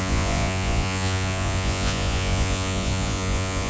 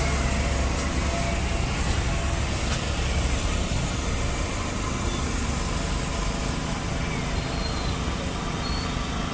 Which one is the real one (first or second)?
second